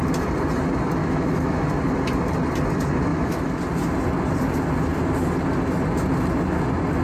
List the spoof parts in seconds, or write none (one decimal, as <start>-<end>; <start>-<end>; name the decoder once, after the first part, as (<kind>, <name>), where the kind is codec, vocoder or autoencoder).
1.0-1.7 (autoencoder, DAC-VAE); 3.1-3.6